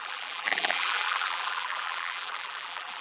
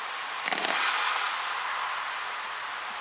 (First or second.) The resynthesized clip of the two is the first